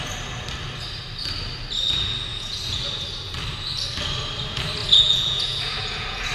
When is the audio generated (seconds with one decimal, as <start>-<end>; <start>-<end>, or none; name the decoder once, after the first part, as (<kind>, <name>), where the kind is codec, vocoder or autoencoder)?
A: 2.3-2.8 (vocoder, Vocos); 4.8-6.3